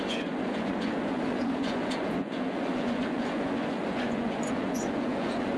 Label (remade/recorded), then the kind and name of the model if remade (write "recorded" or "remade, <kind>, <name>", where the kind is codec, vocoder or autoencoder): remade, vocoder, Vocos